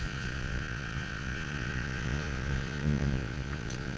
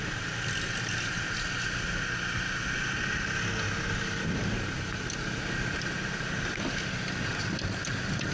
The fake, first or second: first